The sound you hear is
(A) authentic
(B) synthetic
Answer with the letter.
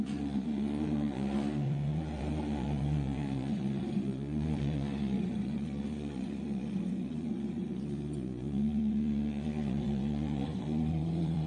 B